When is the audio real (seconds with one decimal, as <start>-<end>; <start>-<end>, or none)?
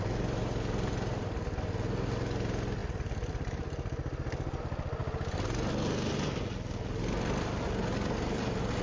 0.0-8.8